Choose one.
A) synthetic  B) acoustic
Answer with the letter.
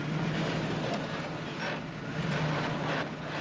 B